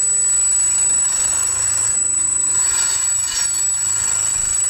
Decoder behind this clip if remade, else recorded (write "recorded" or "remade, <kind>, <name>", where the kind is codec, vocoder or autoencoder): recorded